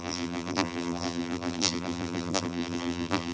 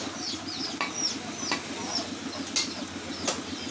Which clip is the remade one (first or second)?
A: first